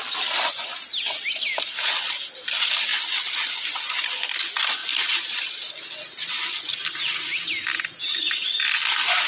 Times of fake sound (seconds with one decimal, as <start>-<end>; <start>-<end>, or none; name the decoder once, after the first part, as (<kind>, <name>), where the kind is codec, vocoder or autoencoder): none